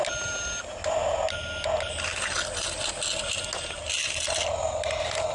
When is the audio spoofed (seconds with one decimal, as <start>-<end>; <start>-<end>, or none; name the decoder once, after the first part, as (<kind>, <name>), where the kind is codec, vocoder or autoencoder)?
none